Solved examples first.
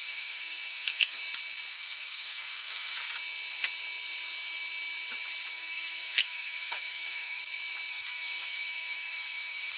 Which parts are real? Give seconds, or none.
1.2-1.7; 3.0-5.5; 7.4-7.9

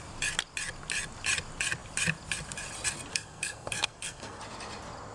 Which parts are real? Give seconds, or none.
0.0-3.1; 4.4-5.1